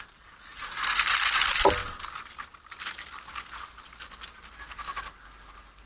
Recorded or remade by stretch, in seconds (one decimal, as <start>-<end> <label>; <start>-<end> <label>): 0.0-5.9 recorded